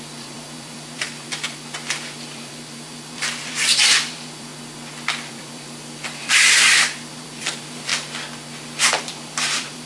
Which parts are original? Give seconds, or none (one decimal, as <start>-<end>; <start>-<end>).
4.5-5.3; 7.9-9.0